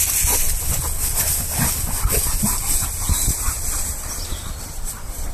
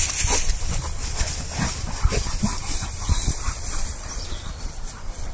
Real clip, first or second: first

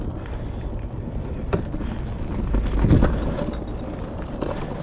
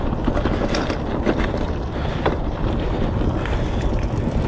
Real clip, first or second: first